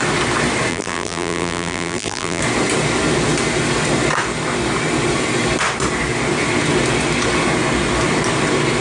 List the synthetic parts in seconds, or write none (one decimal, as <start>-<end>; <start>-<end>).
0.7-2.4